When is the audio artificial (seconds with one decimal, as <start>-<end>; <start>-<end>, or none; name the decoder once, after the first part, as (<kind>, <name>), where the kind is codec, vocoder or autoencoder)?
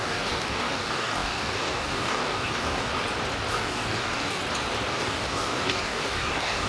0.0-2.9 (codec, DAC); 3.5-4.4; 4.9-6.7